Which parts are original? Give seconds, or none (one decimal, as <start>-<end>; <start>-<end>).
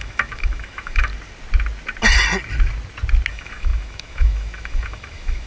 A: 1.1-3.3